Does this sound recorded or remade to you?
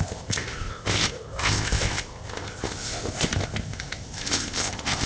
remade